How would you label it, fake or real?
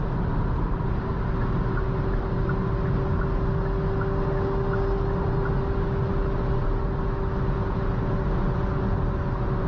real